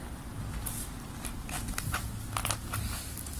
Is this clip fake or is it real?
real